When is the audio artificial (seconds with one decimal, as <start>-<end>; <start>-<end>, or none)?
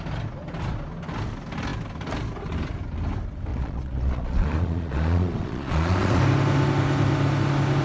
3.5-6.2